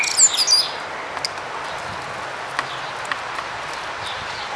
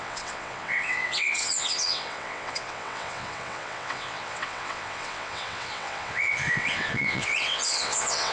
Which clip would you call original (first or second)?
first